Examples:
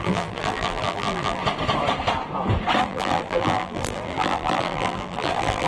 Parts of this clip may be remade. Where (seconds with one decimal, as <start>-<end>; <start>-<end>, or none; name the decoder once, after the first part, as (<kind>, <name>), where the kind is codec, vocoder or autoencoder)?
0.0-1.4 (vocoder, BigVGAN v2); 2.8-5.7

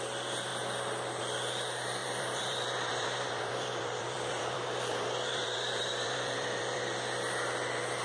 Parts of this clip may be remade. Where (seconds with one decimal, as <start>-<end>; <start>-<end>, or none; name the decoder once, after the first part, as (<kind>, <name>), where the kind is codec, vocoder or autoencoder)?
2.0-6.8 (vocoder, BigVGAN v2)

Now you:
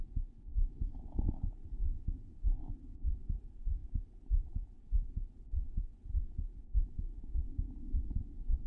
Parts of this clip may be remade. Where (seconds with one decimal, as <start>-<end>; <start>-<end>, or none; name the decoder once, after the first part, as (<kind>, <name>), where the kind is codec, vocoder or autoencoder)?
0.5-1.3 (autoencoder, DAC-VAE)